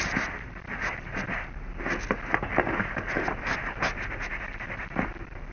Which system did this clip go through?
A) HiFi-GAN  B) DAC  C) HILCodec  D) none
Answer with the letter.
D